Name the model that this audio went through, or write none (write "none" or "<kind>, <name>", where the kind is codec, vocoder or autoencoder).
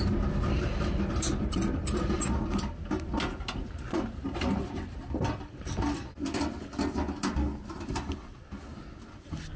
none